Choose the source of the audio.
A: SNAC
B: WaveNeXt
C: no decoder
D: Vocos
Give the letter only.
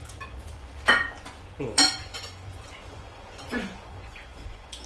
D